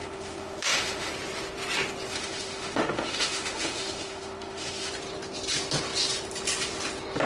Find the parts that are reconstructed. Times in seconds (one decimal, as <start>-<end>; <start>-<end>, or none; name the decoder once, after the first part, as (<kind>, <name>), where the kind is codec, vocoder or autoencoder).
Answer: 0.0-1.1 (autoencoder, DAC-VAE); 2.1-4.9